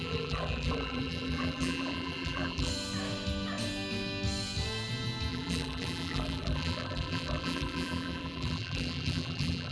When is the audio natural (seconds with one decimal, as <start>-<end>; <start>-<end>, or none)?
2.7-5.3